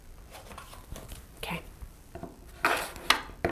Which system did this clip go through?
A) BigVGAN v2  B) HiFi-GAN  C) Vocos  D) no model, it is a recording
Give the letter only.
D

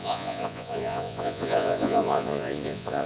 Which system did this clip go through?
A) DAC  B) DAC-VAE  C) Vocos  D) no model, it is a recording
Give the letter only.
C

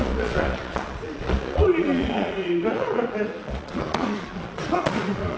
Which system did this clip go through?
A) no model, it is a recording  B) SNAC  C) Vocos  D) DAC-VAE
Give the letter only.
C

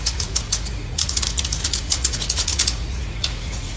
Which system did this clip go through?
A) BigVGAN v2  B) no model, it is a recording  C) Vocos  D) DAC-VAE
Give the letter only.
C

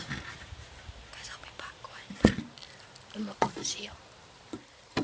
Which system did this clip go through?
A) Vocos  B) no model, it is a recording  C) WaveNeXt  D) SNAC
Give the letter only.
B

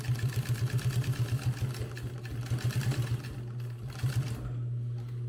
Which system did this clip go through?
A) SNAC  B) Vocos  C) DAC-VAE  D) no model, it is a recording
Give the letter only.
D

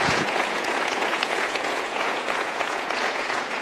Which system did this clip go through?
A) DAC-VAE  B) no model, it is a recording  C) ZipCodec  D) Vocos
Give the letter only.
D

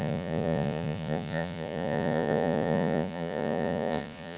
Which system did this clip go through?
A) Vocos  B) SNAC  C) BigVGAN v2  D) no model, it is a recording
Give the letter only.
A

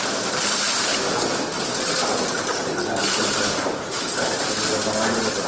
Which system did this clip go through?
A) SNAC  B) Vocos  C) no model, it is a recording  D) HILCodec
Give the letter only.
C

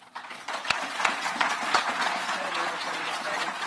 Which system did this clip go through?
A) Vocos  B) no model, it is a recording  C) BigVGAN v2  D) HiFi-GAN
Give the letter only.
A